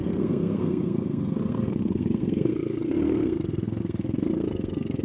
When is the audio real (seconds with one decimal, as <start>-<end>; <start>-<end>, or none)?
none